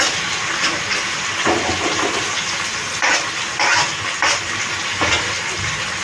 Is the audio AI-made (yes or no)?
no